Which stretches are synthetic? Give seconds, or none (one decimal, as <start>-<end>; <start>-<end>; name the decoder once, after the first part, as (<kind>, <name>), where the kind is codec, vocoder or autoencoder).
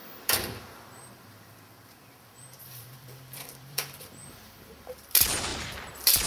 0.0-4.2 (vocoder, BigVGAN v2); 4.9-6.3